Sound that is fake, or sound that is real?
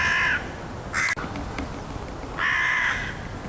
real